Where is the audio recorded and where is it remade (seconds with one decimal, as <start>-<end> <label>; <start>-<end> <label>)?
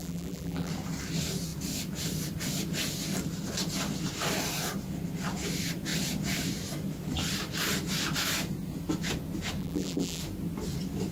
0.0-0.7 remade; 0.7-9.6 recorded; 9.6-10.2 remade; 10.2-11.1 recorded